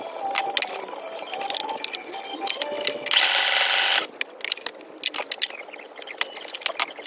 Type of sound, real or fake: real